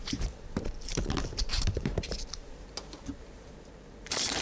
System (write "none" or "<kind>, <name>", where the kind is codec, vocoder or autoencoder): vocoder, BigVGAN v2